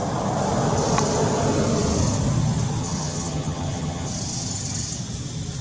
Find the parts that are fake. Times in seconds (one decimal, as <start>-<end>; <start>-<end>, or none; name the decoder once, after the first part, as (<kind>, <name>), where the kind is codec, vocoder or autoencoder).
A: 2.8-4.1 (vocoder, HiFi-GAN)

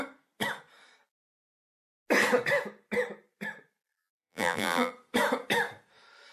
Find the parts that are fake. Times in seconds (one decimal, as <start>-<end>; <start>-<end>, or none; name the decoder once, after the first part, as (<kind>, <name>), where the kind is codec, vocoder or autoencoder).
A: 4.0-4.9 (vocoder, BigVGAN v2)

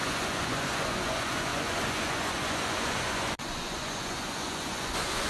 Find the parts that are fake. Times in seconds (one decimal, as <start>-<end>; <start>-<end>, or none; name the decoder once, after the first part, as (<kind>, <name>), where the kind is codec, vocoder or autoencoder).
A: 0.0-5.3 (vocoder, Vocos)

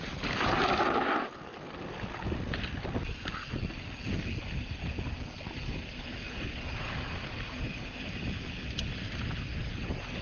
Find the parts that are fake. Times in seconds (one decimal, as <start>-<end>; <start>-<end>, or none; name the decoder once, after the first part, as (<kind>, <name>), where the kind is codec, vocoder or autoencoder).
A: none

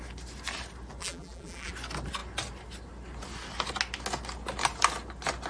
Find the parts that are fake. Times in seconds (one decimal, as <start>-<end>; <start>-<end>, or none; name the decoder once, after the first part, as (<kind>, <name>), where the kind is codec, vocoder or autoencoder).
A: 1.0-1.7 (vocoder, BigVGAN v2)

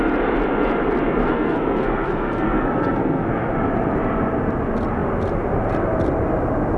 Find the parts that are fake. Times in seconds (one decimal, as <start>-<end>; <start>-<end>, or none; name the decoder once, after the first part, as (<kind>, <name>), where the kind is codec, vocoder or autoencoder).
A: 1.2-3.5 (codec, SNAC)